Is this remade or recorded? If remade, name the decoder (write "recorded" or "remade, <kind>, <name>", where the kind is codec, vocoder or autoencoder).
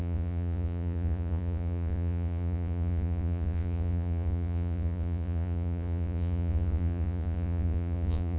remade, vocoder, Vocos